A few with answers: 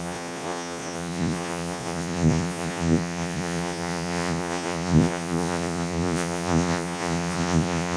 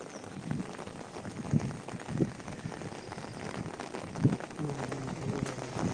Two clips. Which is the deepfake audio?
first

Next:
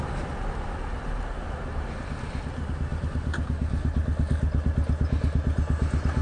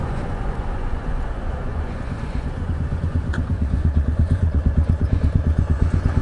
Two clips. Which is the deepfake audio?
second